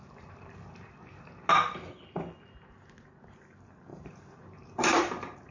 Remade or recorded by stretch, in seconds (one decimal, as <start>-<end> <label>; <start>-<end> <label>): 0.0-1.5 remade; 1.5-3.9 recorded; 3.9-5.5 remade